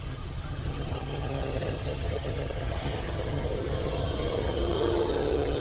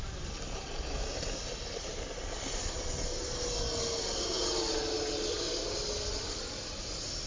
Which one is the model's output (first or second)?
first